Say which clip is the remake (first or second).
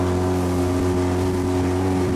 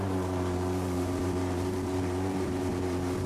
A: second